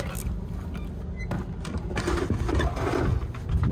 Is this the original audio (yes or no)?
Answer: yes